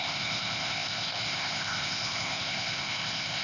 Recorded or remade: remade